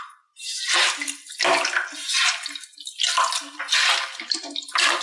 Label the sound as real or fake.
real